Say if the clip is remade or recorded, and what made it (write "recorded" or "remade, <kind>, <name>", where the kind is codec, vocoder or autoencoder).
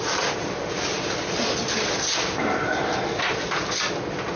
recorded